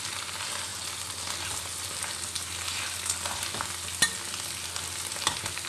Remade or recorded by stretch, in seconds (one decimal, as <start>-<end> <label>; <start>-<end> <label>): 0.0-5.7 recorded